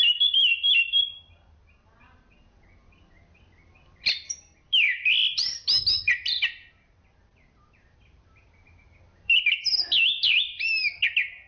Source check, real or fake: fake